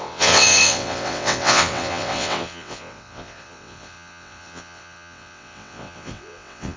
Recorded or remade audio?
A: remade